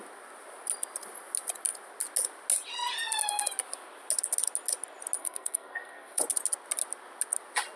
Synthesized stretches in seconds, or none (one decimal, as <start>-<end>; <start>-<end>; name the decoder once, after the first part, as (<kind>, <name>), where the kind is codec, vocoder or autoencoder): 5.2-6.2 (codec, SNAC)